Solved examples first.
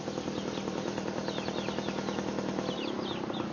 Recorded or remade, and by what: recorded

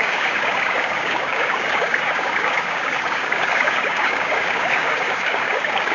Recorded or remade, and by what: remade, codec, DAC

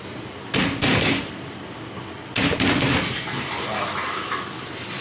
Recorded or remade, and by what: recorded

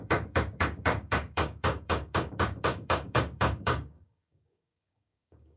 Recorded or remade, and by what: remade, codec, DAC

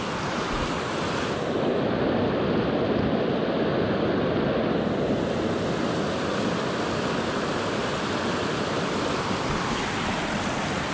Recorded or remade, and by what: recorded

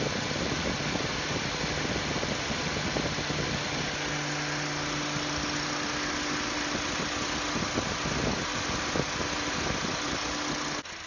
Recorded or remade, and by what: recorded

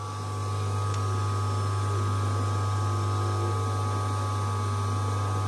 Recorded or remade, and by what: recorded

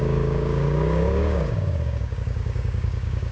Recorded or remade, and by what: remade, codec, DAC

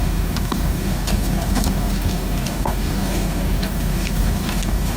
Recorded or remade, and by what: remade, codec, DAC